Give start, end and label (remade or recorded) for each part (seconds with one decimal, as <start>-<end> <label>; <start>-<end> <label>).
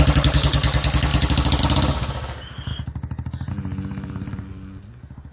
0.0-5.3 recorded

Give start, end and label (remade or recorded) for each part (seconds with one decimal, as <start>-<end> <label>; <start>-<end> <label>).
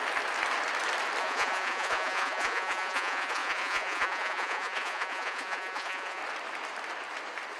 0.0-1.2 recorded; 1.2-6.2 remade; 6.2-7.6 recorded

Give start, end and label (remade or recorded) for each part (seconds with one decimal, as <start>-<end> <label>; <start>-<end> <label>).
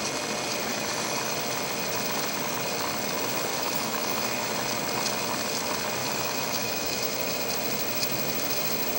0.0-0.7 recorded; 0.7-1.3 remade; 1.3-3.5 recorded; 3.5-4.5 remade; 4.5-6.0 recorded; 6.0-7.3 remade; 7.3-9.0 recorded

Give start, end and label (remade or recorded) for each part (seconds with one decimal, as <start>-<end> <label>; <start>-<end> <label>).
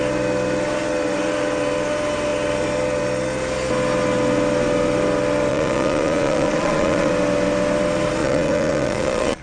0.0-5.5 recorded; 5.5-7.1 remade; 7.1-8.2 recorded; 8.2-9.4 remade